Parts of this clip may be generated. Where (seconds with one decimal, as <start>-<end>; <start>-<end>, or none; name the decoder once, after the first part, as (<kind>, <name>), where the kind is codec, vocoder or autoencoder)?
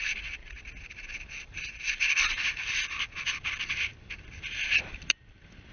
0.0-5.7 (vocoder, BigVGAN v2)